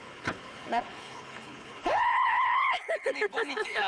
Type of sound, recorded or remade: remade